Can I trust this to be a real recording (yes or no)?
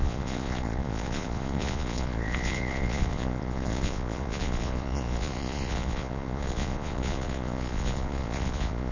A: no